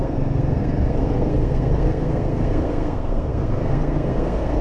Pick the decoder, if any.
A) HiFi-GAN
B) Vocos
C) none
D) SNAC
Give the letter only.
D